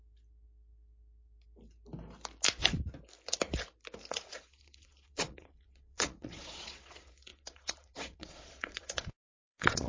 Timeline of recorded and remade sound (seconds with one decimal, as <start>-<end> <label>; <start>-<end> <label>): 0.0-4.1 recorded; 4.1-9.9 remade